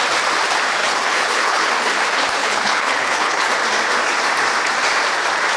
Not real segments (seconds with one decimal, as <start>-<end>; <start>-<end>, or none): 0.8-1.7; 2.4-3.5